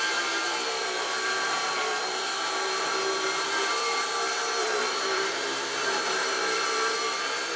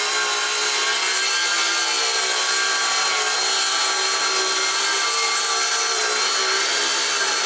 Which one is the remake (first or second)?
first